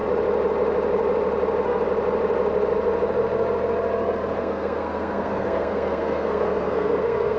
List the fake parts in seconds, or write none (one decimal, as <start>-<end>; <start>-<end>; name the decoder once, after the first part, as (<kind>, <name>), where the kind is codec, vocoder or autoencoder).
4.4-7.4 (codec, SNAC)